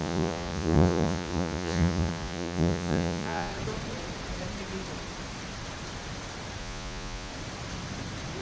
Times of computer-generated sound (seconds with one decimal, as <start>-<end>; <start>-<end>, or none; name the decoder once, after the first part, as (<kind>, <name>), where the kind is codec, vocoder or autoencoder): 0.0-3.5 (vocoder, Vocos); 6.6-7.3